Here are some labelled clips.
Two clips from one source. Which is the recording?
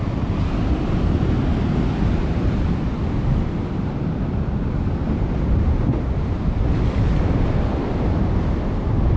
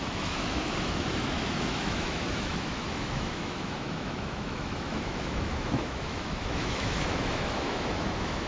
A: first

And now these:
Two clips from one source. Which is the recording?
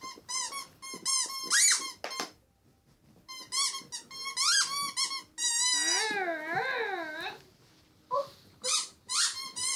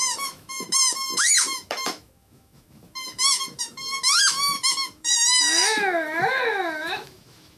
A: first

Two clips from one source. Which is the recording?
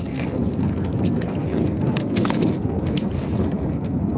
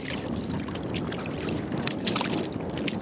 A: second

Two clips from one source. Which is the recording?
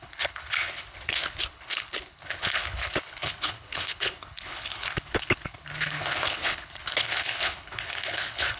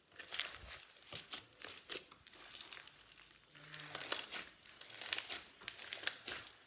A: second